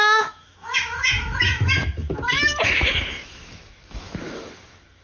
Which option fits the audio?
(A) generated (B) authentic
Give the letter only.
A